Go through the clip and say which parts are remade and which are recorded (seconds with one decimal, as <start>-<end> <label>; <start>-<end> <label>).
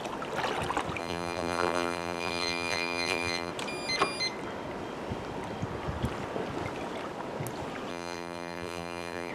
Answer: 0.0-1.0 recorded; 1.0-3.5 remade; 3.5-7.9 recorded; 7.9-9.3 remade